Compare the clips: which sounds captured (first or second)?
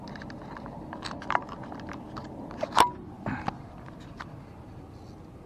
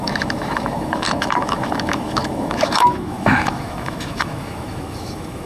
first